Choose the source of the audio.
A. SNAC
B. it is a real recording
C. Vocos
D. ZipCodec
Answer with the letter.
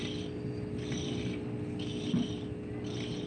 B